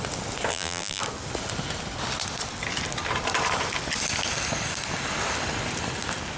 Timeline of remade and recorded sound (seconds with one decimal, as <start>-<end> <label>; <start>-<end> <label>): 0.0-0.5 recorded; 0.5-1.0 remade; 1.0-6.4 recorded